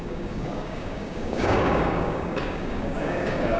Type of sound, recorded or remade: remade